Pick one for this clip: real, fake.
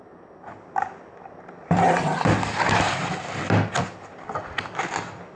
real